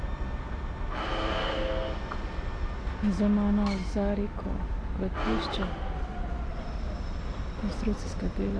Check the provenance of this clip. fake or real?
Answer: real